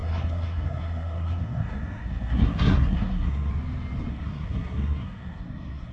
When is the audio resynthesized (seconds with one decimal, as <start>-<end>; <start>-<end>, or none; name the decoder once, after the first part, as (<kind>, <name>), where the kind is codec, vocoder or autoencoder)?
0.0-3.5 (codec, SNAC); 4.1-5.9